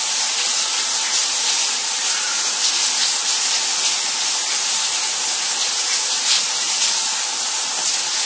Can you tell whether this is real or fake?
real